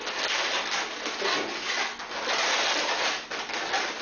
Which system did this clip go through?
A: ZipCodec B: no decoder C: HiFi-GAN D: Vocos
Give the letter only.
B